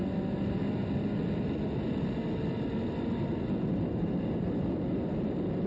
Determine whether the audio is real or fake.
real